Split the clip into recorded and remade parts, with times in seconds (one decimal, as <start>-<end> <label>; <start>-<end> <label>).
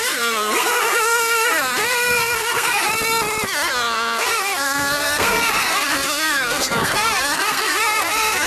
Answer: 0.0-2.9 remade; 2.9-3.7 recorded; 3.7-8.5 remade